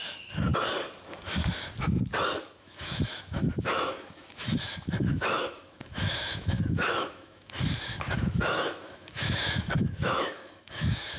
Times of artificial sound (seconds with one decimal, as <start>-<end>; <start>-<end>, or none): 0.0-0.5; 2.4-11.2